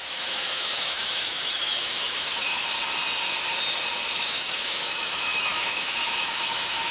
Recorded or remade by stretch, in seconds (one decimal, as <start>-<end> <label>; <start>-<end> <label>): 0.0-2.6 remade; 2.6-4.1 recorded; 4.1-6.9 remade